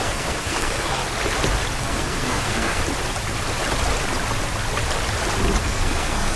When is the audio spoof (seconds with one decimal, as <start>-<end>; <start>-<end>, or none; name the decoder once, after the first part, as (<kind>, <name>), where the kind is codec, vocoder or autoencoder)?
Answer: 0.0-1.0 (codec, SNAC); 1.8-2.8; 5.6-6.4